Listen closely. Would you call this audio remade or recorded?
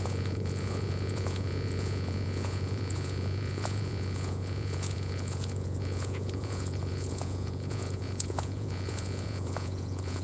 remade